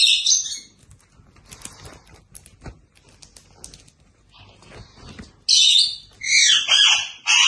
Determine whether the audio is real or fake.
real